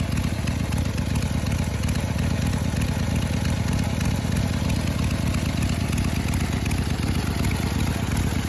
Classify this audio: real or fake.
real